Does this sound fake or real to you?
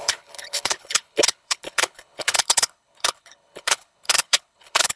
fake